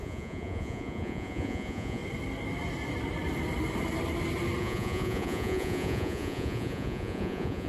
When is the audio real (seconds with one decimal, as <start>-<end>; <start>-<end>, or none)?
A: 2.0-4.6